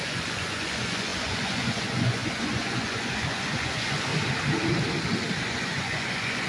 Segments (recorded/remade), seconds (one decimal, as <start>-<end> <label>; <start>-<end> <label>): 0.0-4.1 remade; 4.1-5.4 recorded; 5.4-6.5 remade